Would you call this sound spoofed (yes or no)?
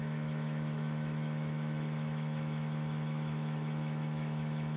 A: yes